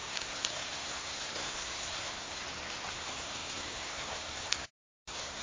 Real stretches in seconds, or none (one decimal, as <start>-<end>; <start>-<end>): 2.4-2.9